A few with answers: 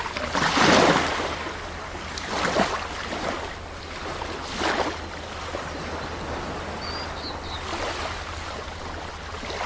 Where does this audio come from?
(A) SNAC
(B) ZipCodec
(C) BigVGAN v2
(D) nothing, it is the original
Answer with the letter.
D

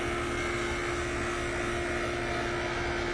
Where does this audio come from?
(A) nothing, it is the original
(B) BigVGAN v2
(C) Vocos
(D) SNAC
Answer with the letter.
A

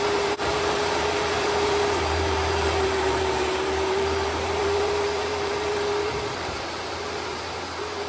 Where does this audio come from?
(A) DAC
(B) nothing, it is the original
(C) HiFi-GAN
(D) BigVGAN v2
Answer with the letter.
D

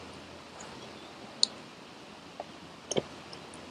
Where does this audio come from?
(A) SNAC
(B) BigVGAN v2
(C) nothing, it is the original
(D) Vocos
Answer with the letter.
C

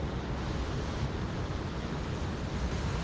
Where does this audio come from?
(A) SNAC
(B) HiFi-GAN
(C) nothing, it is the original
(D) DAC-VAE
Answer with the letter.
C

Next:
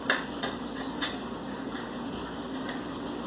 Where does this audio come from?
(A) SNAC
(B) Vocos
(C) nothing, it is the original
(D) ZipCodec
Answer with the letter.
C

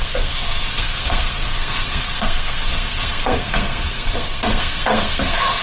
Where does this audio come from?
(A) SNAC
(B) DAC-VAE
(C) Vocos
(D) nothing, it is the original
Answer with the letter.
A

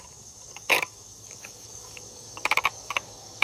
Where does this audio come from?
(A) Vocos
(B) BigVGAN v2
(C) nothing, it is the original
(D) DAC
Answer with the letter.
D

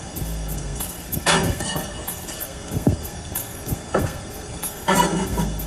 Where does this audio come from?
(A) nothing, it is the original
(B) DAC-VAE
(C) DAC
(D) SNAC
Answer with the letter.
D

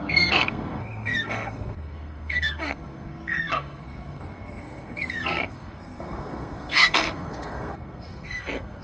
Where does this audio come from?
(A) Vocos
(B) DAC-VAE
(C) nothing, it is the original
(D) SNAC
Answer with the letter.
D